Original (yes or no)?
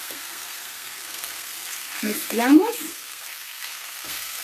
no